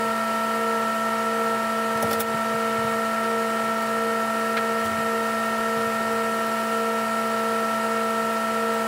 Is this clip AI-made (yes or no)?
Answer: no